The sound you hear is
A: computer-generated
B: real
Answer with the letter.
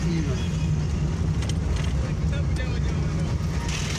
B